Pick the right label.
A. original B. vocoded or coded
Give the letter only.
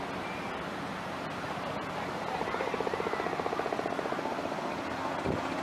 A